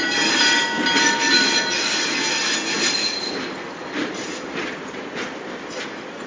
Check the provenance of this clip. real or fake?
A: real